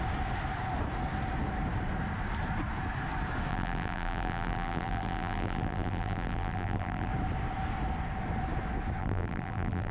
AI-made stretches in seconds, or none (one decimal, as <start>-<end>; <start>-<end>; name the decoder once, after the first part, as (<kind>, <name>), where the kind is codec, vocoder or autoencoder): 3.5-7.1 (vocoder, BigVGAN v2); 9.0-9.9